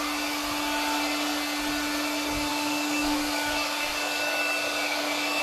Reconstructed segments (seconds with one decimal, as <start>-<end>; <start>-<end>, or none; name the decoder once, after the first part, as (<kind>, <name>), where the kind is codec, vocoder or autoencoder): 2.5-5.4 (codec, DAC)

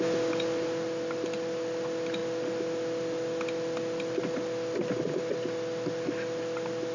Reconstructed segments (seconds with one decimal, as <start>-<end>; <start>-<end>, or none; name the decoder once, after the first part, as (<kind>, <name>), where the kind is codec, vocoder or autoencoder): none

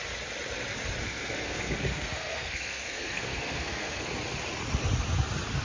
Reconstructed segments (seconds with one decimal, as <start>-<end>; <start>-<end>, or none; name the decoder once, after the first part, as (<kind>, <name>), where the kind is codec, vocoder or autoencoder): 1.0-4.1 (codec, SNAC)

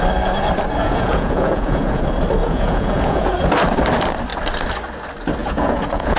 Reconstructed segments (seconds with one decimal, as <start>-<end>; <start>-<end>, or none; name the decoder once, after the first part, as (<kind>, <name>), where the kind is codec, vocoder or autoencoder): 0.8-2.0 (vocoder, Vocos); 2.4-3.3; 5.4-6.2

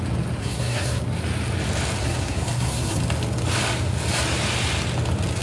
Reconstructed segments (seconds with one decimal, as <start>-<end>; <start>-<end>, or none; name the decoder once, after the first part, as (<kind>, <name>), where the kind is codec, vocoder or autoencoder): 0.4-1.0 (codec, SNAC); 2.0-3.0

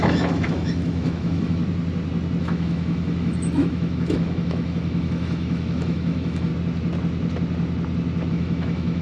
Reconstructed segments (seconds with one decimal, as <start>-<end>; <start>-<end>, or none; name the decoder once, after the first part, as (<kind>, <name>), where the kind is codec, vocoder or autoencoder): 0.0-1.6 (autoencoder, DAC-VAE); 2.4-6.5; 8.3-9.0

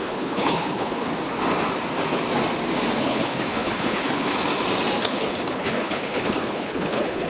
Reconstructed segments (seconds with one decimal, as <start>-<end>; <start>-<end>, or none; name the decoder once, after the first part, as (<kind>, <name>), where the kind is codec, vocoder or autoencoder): 0.0-1.1 (codec, HILCodec); 3.0-4.3; 5.0-7.3

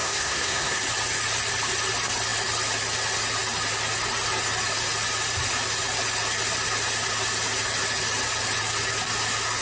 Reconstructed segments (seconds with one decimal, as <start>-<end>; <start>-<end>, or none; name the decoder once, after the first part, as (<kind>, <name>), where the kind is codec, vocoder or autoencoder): 0.0-0.8 (codec, SNAC)